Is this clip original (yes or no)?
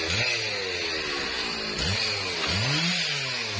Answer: yes